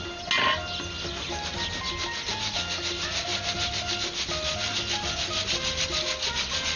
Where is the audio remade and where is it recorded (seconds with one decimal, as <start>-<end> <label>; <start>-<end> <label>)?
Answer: 0.0-6.8 recorded